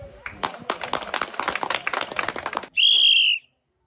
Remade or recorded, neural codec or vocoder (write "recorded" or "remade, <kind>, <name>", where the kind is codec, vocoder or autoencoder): recorded